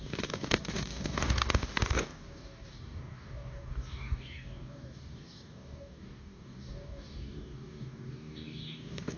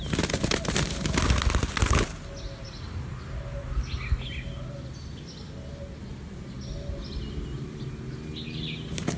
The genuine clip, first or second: second